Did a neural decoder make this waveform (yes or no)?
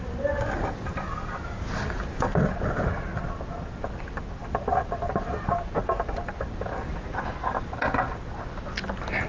no